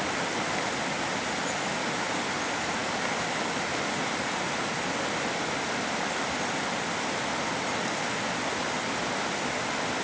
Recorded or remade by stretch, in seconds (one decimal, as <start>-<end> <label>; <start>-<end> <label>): 0.0-10.0 recorded